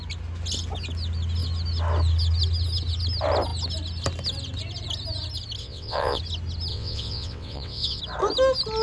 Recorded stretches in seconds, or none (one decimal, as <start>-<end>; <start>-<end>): 0.0-5.6; 6.2-6.7; 8.0-8.8